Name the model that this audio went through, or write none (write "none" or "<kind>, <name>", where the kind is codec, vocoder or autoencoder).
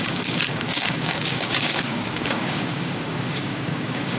codec, DAC